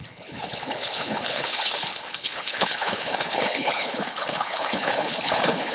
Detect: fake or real fake